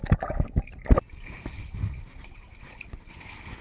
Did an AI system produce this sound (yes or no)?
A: no